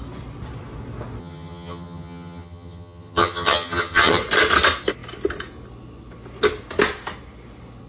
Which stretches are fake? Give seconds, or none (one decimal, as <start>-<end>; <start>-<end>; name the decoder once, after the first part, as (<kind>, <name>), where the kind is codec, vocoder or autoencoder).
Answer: 1.2-4.2 (vocoder, HiFi-GAN)